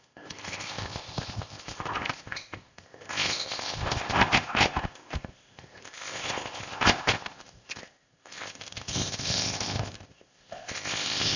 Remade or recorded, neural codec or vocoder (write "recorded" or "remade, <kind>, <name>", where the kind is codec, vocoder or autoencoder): remade, codec, ZipCodec